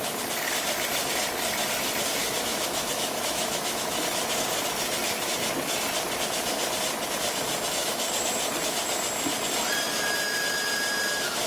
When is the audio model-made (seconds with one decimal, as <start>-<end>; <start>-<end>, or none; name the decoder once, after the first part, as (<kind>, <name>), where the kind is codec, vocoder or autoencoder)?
2.2-4.0 (autoencoder, DAC-VAE)

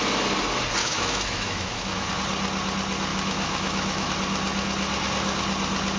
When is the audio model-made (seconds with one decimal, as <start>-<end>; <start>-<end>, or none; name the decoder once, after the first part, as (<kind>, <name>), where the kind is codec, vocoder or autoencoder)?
0.8-2.1 (autoencoder, DAC-VAE); 3.1-4.1

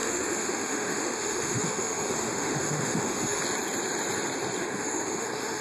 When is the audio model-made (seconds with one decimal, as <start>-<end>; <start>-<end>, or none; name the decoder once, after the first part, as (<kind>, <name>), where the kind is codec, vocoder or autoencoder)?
0.0-3.4 (autoencoder, DAC-VAE); 4.6-5.6

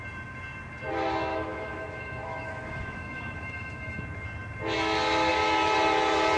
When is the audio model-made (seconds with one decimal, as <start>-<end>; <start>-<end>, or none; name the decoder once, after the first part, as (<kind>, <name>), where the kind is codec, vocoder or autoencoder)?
1.3-4.0 (autoencoder, DAC-VAE)